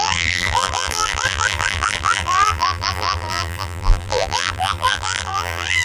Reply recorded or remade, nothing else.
remade